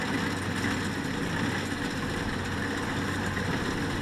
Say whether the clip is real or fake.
real